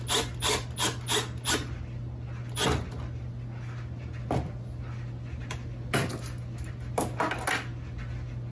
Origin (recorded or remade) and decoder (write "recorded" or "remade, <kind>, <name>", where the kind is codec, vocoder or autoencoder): recorded